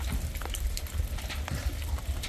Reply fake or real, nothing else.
fake